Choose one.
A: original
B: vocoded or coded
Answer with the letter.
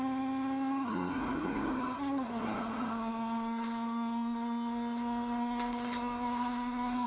B